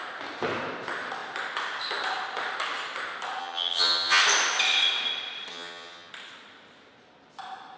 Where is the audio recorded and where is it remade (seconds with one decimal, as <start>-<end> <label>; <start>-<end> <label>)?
0.0-3.4 recorded; 3.4-4.2 remade; 4.2-5.5 recorded; 5.5-6.1 remade; 6.1-7.8 recorded